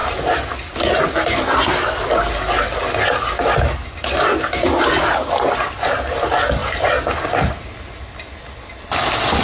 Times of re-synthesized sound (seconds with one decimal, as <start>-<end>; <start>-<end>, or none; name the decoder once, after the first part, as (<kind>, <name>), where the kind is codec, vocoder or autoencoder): none